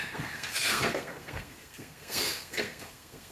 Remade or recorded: remade